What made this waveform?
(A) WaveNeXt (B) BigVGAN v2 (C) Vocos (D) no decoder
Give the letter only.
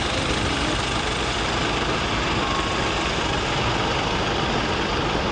D